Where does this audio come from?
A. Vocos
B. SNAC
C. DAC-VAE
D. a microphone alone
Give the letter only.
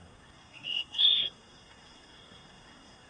B